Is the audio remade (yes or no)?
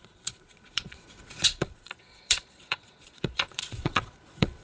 yes